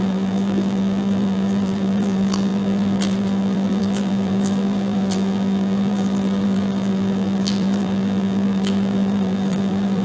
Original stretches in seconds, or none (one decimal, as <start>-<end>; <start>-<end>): none